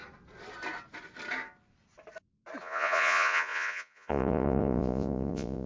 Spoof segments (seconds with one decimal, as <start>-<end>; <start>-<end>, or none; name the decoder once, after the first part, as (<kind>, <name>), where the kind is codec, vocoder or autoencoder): 2.6-5.7 (vocoder, Vocos)